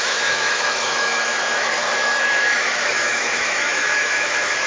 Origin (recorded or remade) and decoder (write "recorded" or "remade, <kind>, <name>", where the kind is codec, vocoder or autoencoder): remade, autoencoder, DAC-VAE